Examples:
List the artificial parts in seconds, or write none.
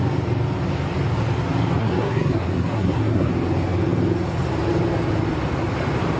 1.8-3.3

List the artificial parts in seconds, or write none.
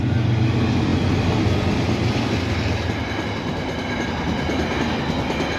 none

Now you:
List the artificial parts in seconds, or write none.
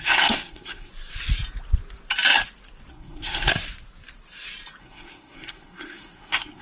0.0-0.9; 2.9-3.5; 4.8-6.6